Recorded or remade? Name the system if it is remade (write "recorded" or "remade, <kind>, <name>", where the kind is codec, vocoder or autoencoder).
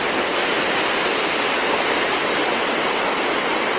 recorded